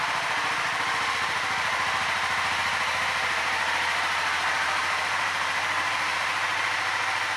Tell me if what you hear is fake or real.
fake